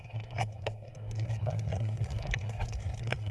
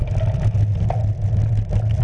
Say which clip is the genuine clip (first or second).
second